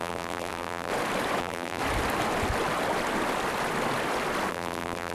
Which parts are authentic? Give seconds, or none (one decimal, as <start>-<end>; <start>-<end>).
0.9-1.4; 1.8-4.5